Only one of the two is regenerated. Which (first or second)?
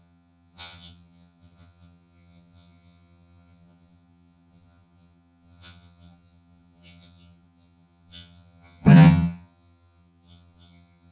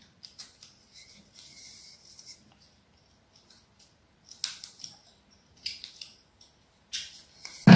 first